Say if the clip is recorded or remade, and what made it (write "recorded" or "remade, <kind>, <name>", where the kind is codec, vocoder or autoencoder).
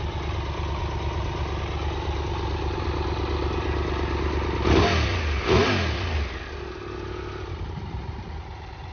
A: recorded